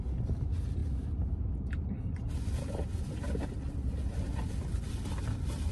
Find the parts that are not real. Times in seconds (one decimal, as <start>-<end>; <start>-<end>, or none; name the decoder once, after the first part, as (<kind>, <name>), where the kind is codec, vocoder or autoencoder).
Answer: none